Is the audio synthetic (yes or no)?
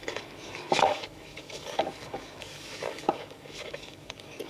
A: yes